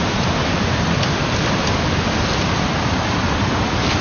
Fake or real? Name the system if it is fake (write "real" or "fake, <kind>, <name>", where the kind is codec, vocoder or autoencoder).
real